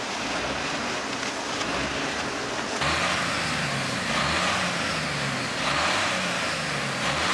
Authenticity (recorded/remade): recorded